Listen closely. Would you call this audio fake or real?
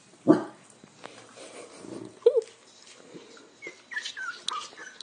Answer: real